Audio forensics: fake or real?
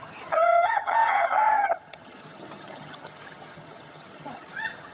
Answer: fake